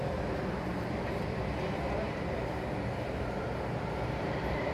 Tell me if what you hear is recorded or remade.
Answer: recorded